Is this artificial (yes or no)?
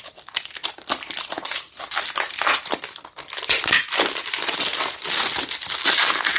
no